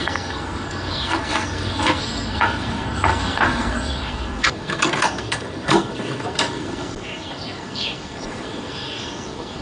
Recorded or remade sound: remade